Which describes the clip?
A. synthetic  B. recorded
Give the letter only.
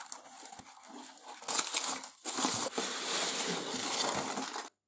B